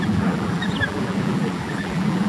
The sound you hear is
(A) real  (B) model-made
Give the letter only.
B